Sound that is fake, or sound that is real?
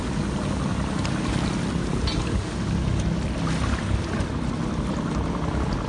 real